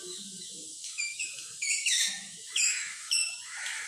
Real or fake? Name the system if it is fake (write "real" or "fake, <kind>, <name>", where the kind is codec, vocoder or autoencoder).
fake, autoencoder, DAC-VAE